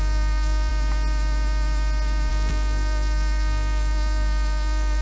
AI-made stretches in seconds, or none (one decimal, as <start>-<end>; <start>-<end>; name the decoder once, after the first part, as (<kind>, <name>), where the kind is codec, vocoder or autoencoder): 0.0-0.7 (codec, SNAC); 2.3-5.0